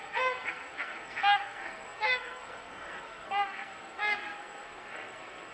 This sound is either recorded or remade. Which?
remade